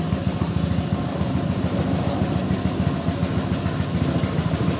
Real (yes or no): yes